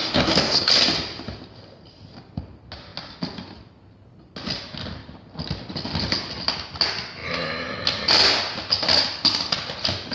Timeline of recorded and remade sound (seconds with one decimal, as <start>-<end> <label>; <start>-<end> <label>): 0.0-0.7 remade; 0.7-10.1 recorded